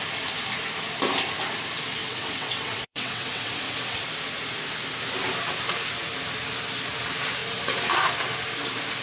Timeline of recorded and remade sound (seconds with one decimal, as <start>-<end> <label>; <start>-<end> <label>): 0.0-2.0 recorded; 2.0-3.5 remade; 3.5-9.0 recorded